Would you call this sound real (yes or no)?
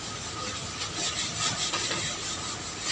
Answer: yes